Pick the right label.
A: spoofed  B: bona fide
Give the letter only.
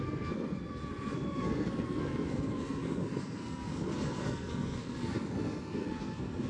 A